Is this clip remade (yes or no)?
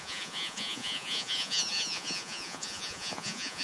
yes